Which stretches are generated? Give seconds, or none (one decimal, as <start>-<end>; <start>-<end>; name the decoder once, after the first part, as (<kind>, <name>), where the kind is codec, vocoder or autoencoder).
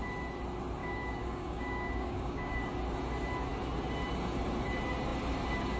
0.8-2.6 (codec, DAC)